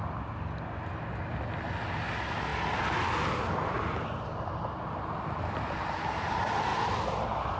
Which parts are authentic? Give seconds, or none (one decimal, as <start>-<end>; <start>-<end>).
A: 0.0-7.6